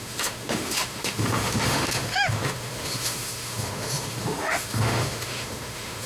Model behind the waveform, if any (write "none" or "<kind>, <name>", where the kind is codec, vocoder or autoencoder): autoencoder, DAC-VAE